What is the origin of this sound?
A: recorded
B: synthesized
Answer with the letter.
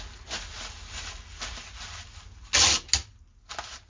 A